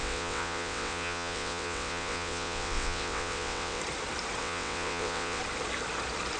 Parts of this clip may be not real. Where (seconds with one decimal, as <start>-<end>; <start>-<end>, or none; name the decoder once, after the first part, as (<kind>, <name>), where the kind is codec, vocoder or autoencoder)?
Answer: 0.0-3.8 (vocoder, WaveNeXt); 4.4-5.4